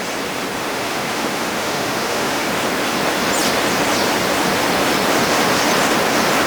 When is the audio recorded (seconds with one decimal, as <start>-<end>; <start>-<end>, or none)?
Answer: 0.0-0.7; 2.5-6.5